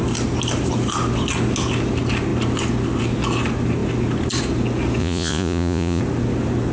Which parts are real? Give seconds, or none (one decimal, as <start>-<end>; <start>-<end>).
0.0-5.0; 6.0-6.7